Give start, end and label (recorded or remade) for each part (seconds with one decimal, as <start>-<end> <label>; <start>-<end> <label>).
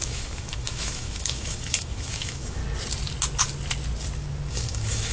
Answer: 0.0-2.6 remade; 2.6-4.5 recorded; 4.5-5.1 remade